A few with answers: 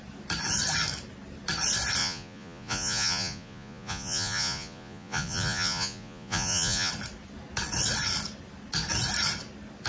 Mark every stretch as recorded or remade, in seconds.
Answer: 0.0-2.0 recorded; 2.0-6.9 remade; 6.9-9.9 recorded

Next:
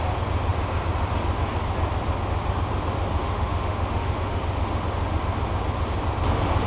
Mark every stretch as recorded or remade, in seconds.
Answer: 0.0-3.2 recorded; 3.2-4.4 remade; 4.4-6.7 recorded

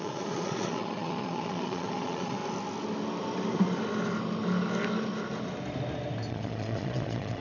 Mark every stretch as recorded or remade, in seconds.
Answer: 0.0-2.4 remade; 2.4-6.3 recorded; 6.3-7.4 remade

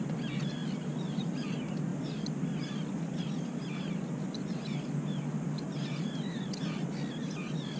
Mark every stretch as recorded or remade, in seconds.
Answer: 0.0-7.8 recorded